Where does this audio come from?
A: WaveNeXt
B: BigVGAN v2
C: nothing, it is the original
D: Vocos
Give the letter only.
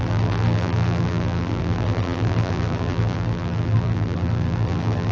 B